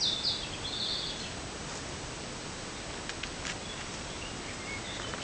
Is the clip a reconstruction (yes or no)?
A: no